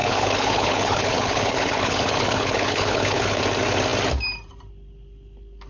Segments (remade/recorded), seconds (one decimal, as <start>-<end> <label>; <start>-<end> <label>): 0.0-3.4 remade; 3.4-5.7 recorded